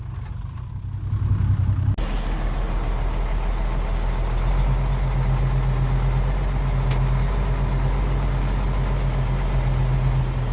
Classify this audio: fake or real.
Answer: real